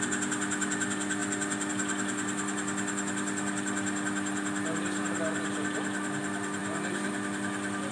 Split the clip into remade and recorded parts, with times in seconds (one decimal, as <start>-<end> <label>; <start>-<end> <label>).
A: 0.0-7.9 recorded